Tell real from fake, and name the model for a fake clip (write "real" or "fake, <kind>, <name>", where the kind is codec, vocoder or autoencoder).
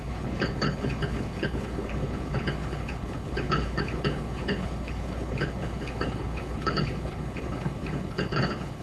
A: fake, codec, HILCodec